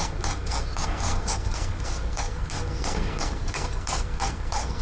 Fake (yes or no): yes